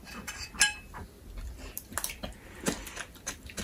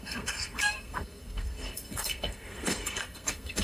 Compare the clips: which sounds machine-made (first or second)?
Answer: second